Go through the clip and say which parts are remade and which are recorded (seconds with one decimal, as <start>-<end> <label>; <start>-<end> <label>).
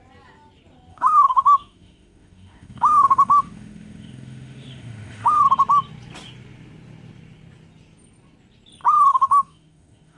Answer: 0.0-0.9 recorded; 0.9-5.4 remade; 5.4-9.1 recorded; 9.1-10.2 remade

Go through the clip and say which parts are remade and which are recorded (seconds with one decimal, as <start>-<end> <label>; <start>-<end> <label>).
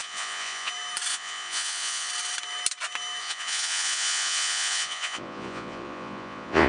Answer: 0.0-0.7 remade; 0.7-1.1 recorded; 1.1-2.1 remade; 2.1-3.2 recorded; 3.2-6.7 remade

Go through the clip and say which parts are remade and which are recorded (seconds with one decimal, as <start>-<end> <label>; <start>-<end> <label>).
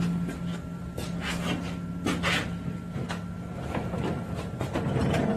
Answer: 0.0-5.4 recorded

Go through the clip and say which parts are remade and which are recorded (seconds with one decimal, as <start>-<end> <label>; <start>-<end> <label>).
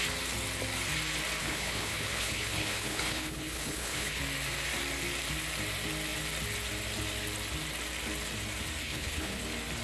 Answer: 0.0-1.4 recorded; 1.4-4.2 remade; 4.2-8.8 recorded; 8.8-9.4 remade; 9.4-9.8 recorded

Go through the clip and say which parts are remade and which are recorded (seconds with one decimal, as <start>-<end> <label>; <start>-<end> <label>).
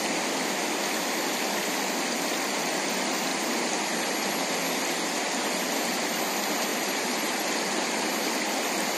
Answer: 0.0-6.7 recorded; 6.7-7.5 remade; 7.5-9.0 recorded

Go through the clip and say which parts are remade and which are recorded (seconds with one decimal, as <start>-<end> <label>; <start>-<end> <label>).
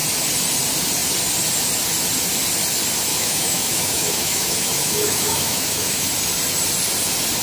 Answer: 0.0-3.1 recorded; 3.1-6.1 remade; 6.1-7.4 recorded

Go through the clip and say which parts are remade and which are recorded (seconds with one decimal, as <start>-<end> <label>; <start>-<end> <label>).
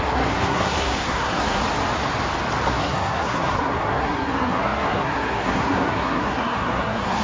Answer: 0.0-1.6 remade; 1.6-2.7 recorded; 2.7-7.2 remade